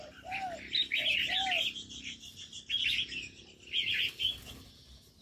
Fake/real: real